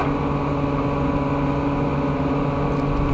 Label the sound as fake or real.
real